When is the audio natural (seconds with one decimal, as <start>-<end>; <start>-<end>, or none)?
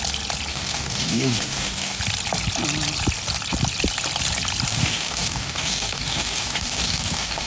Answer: 0.0-0.5; 2.0-4.7